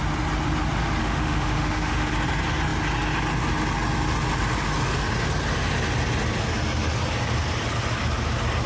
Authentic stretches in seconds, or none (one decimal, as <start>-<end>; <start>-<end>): 0.0-1.0; 2.1-8.7

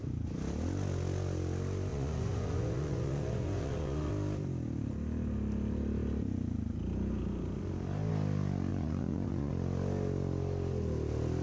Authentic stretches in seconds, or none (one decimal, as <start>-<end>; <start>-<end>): 0.0-1.9; 4.1-8.7; 9.5-11.4

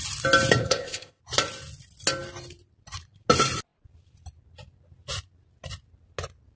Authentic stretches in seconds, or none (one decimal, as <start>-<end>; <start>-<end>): 0.0-0.6; 1.2-6.6

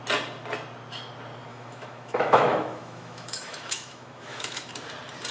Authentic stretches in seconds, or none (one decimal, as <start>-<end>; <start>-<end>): 0.0-1.5; 4.7-5.3